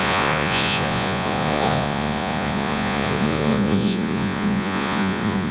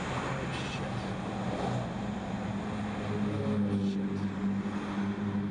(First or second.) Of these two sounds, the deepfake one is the first